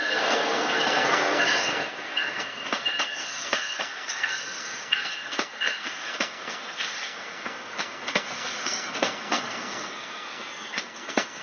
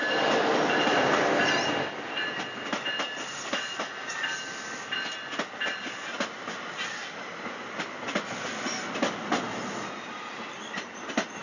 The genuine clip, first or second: second